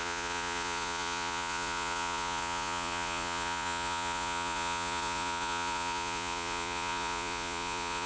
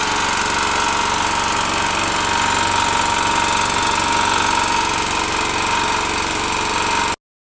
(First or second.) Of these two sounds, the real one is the second